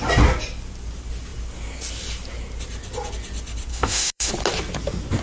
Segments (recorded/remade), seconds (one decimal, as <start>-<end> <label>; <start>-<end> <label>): 0.0-3.7 recorded; 3.7-4.3 remade; 4.3-5.2 recorded